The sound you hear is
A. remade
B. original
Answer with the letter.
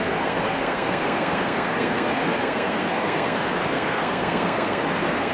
A